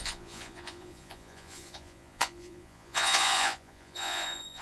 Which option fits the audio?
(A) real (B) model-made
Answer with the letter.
B